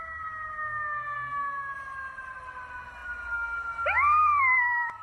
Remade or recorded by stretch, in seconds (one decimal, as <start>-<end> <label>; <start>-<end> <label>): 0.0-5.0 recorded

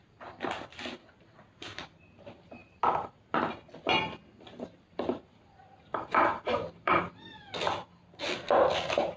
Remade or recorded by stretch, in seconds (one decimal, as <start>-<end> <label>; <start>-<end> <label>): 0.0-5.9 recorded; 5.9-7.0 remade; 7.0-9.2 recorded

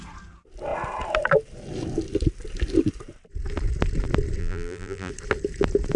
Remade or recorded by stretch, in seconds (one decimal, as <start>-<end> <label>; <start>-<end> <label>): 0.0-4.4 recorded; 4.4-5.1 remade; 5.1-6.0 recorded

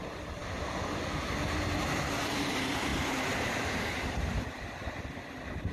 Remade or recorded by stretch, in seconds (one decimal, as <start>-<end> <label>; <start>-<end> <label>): 0.0-5.7 recorded

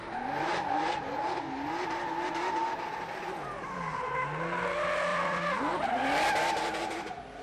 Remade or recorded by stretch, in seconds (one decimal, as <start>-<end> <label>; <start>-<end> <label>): 0.0-5.1 recorded; 5.1-5.6 remade; 5.6-7.4 recorded